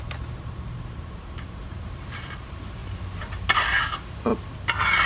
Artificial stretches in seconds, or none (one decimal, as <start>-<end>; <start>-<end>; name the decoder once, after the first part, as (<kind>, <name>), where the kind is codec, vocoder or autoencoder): 0.0-2.8 (vocoder, BigVGAN v2); 3.8-4.3